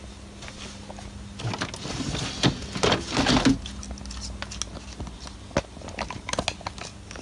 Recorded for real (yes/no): yes